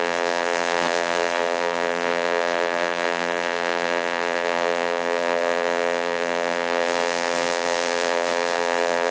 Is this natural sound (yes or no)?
no